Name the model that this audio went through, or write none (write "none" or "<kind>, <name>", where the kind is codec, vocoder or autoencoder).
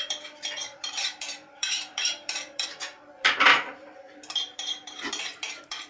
vocoder, BigVGAN v2